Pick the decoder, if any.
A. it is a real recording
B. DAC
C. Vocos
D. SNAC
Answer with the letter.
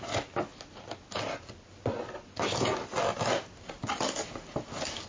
A